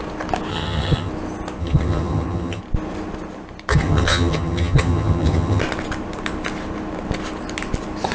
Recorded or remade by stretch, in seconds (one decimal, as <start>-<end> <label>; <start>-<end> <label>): 0.0-0.5 recorded; 0.5-1.1 remade; 1.1-1.6 recorded; 1.6-2.6 remade; 2.6-3.7 recorded; 3.7-5.6 remade; 5.6-8.1 recorded